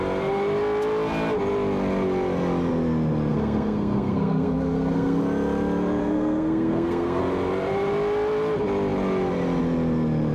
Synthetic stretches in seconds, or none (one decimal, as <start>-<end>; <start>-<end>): 3.3-5.2; 6.0-7.2